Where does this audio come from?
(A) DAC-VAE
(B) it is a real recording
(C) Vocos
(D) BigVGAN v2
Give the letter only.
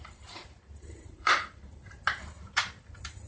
D